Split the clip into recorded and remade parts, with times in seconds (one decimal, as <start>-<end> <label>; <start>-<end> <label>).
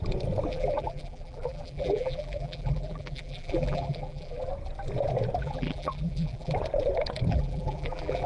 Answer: 0.0-0.5 recorded; 0.5-4.5 remade; 4.5-5.4 recorded; 5.4-6.5 remade; 6.5-7.3 recorded; 7.3-8.3 remade